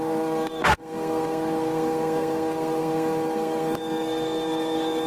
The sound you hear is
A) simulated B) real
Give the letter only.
A